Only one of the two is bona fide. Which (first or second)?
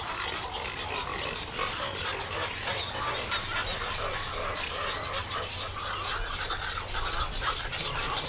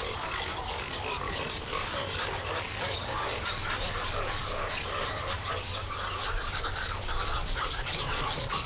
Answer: first